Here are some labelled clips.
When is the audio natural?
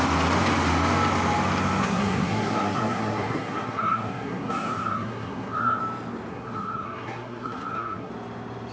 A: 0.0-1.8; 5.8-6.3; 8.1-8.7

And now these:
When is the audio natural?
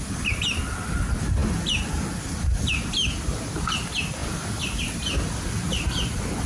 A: 0.0-6.5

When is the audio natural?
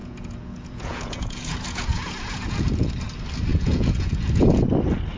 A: 2.9-3.5; 4.6-5.2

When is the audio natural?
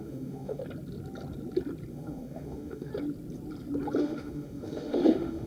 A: 0.6-1.9; 2.9-4.0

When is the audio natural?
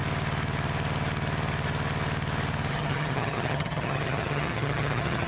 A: 0.0-2.7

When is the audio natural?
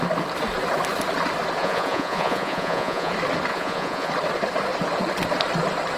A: 0.0-1.6; 3.1-3.5; 4.1-6.0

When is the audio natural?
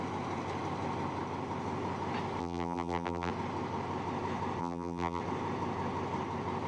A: 0.0-2.4; 3.3-4.6; 5.2-6.7